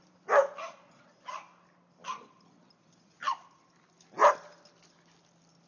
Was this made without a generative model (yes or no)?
yes